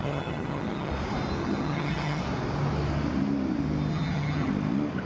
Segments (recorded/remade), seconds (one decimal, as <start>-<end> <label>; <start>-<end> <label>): 0.0-0.9 remade; 0.9-1.4 recorded; 1.4-2.2 remade; 2.2-3.9 recorded; 3.9-4.5 remade; 4.5-5.1 recorded